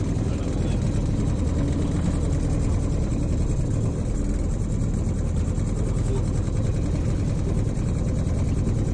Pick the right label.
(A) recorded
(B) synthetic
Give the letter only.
A